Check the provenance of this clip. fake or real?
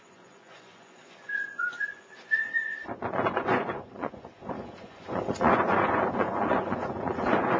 fake